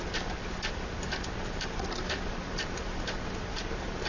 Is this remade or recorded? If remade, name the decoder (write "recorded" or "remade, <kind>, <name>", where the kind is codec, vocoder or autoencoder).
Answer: recorded